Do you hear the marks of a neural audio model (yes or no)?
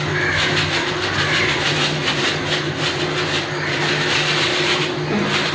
no